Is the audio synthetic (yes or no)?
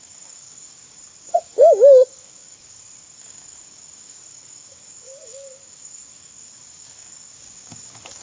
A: yes